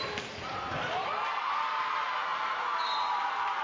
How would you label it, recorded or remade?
recorded